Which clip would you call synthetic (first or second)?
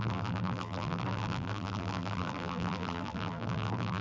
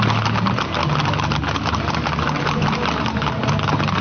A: first